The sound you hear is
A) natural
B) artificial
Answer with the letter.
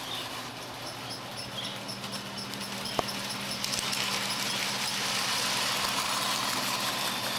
A